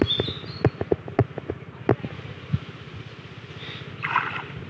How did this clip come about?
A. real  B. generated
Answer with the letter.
A